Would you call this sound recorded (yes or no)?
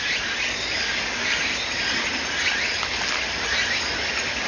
yes